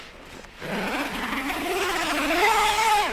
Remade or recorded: recorded